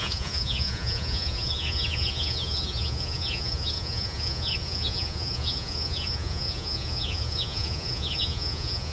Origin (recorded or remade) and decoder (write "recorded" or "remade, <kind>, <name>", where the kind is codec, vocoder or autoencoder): remade, vocoder, Vocos